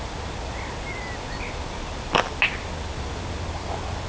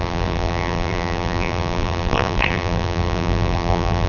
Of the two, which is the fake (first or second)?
second